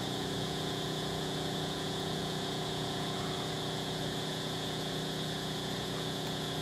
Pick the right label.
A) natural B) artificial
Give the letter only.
B